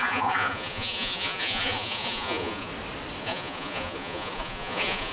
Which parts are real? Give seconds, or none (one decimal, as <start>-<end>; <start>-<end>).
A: 2.7-3.2